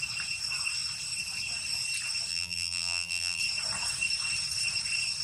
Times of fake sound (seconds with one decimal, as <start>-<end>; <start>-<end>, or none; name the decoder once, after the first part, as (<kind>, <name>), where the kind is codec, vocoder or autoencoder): 2.3-3.4 (vocoder, BigVGAN v2)